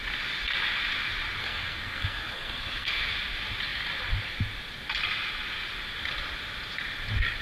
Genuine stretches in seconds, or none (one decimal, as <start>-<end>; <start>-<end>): 0.0-1.4; 3.1-7.4